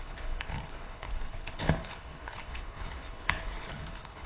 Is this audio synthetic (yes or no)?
yes